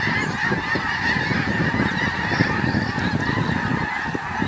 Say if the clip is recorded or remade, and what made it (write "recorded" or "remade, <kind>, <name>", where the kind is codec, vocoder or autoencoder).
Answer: recorded